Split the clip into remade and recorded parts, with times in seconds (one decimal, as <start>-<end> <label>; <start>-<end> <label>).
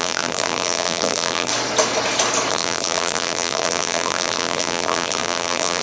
0.0-1.5 remade; 1.5-2.5 recorded; 2.5-5.8 remade